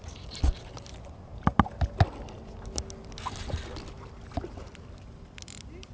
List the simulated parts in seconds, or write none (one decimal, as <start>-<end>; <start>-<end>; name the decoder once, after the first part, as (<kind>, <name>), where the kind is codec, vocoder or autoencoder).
none